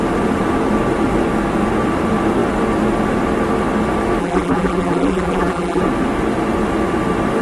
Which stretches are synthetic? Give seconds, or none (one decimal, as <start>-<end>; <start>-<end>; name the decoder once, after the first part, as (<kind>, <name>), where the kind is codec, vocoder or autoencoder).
4.2-5.8 (vocoder, BigVGAN v2)